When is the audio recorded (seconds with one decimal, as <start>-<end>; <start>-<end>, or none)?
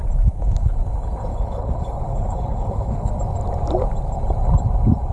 0.0-1.3; 3.1-5.1